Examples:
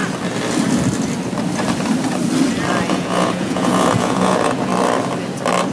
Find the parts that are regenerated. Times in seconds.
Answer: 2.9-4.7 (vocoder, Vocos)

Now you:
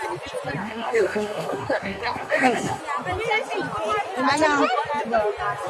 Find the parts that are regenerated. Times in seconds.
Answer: 0.6-2.8 (codec, SNAC)

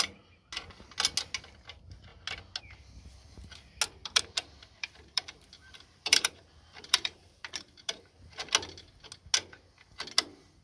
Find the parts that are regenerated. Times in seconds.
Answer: 4.0-8.0 (vocoder, BigVGAN v2)

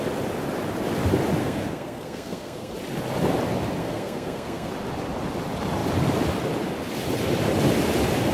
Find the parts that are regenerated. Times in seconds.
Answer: 1.4-2.7 (codec, SNAC); 3.8-4.7

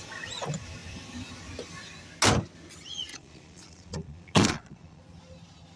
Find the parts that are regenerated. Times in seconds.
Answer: 3.1-5.0 (vocoder, Vocos)